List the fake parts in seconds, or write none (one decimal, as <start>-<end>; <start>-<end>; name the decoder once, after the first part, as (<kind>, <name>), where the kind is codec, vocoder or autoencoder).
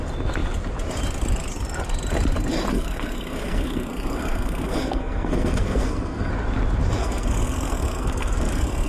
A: 2.7-6.3 (codec, SNAC); 7.0-8.9